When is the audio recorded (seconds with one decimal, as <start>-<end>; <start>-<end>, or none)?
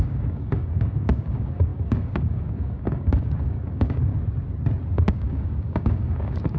4.1-5.1